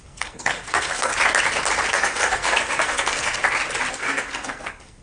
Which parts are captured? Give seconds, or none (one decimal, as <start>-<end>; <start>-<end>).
1.1-1.9; 3.4-3.9